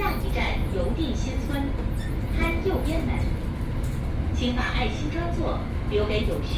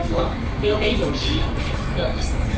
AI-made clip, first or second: second